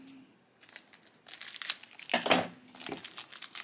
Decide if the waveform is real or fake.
real